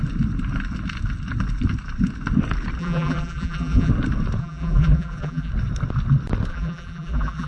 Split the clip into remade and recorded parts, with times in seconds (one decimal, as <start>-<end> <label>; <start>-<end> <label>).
0.0-2.8 recorded; 2.8-3.9 remade; 3.9-4.4 recorded; 4.4-5.5 remade; 5.5-6.5 recorded; 6.5-7.5 remade